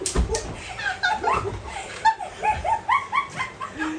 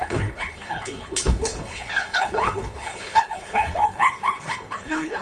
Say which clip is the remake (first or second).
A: second